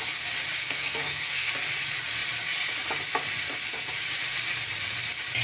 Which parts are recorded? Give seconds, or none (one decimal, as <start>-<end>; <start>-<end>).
0.0-0.6; 1.5-5.4